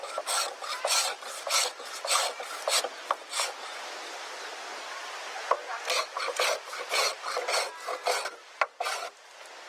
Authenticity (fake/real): real